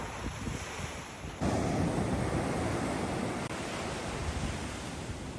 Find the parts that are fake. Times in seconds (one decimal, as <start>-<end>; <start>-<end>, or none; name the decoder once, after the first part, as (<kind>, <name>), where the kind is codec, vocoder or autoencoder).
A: none